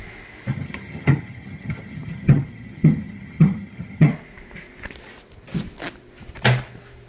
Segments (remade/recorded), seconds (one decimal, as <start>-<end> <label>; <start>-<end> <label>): 0.0-0.5 recorded; 0.5-4.1 remade; 4.1-7.1 recorded